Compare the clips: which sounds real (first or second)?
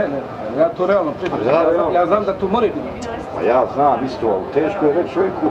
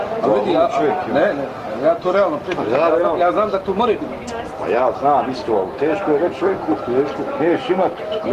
second